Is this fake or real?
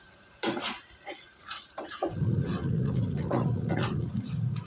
fake